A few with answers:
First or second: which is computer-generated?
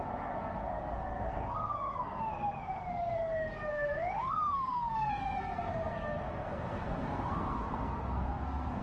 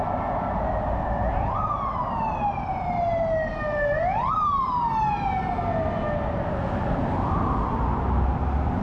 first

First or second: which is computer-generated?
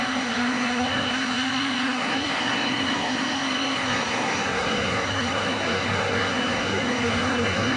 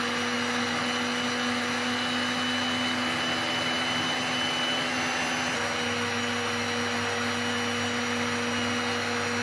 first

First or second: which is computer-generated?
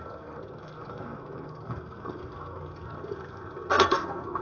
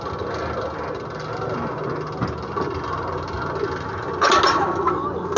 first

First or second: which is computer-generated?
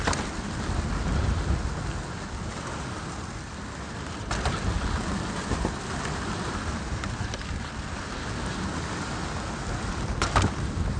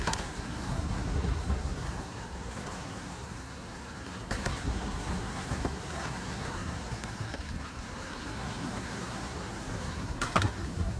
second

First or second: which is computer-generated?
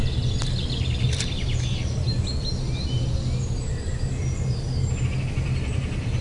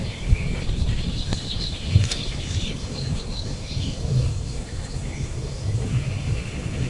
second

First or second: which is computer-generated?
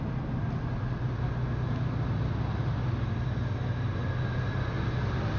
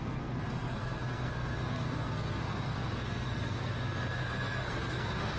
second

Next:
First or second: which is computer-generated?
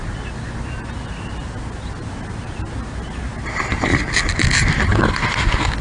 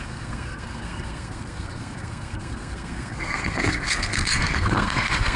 second